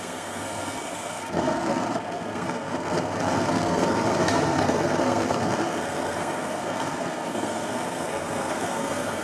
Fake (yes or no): yes